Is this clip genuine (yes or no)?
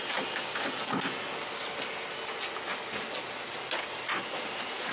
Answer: yes